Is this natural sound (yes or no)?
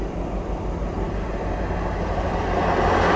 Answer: yes